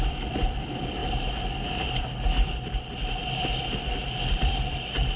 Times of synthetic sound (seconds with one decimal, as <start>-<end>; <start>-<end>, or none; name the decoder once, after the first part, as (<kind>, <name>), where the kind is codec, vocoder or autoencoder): 0.0-1.0 (vocoder, BigVGAN v2); 4.1-5.2